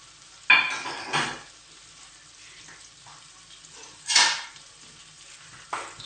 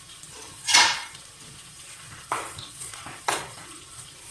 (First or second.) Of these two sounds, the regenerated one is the second